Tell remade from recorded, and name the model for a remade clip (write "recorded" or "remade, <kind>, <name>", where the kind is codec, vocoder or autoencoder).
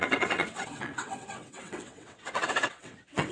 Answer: remade, vocoder, WaveNeXt